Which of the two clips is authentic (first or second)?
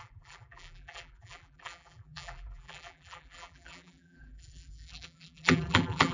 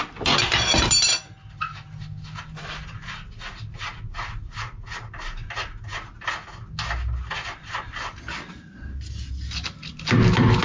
second